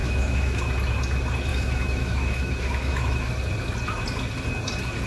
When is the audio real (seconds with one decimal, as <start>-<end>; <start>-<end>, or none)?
0.6-1.5; 3.3-5.1